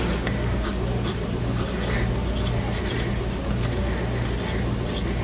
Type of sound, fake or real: real